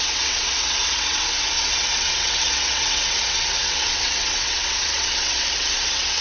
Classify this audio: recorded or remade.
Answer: remade